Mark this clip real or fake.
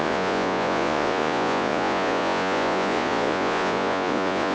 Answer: fake